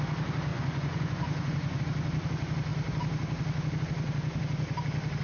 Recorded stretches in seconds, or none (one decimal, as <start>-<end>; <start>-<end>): 0.0-0.5; 1.8-5.2